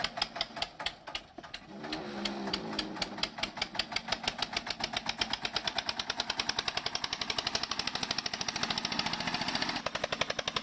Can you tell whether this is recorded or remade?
recorded